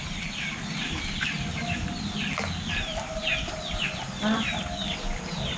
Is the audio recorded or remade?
recorded